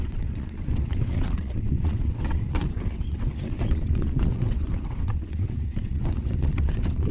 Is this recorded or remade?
remade